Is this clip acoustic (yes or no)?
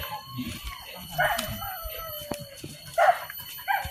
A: yes